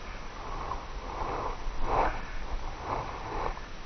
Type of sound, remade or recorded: recorded